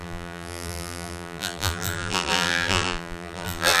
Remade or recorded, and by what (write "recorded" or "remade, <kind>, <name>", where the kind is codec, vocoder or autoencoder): remade, vocoder, BigVGAN v2